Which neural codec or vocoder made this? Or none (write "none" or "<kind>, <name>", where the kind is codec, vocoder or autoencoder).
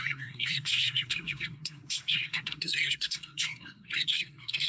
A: codec, SNAC